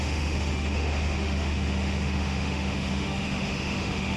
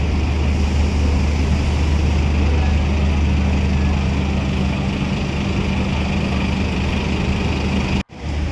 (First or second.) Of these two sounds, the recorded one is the second